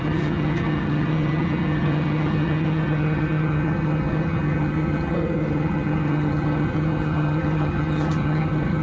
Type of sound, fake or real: fake